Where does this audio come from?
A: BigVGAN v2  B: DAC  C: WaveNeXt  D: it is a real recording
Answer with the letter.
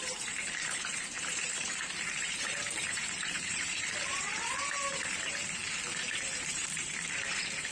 A